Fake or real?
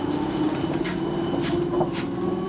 real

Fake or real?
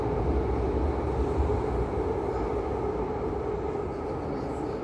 real